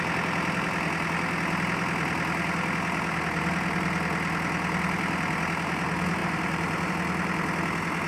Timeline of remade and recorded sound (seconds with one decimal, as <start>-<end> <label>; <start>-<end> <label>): 0.0-6.2 recorded; 6.2-6.9 remade; 6.9-8.1 recorded

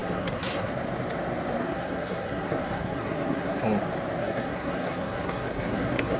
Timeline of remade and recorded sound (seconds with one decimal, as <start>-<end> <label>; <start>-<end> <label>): 0.0-0.7 remade; 0.7-1.6 recorded; 1.6-3.6 remade; 3.6-4.2 recorded; 4.2-6.2 remade

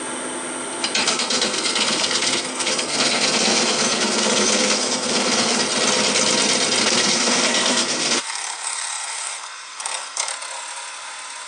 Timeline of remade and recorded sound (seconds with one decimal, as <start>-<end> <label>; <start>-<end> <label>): 0.0-1.0 recorded; 1.0-5.6 remade; 5.6-6.8 recorded; 6.8-10.3 remade; 10.3-11.5 recorded

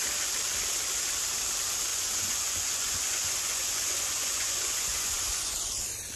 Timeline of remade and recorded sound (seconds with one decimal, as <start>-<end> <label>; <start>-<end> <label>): 0.0-1.9 recorded; 1.9-5.5 remade; 5.5-6.2 recorded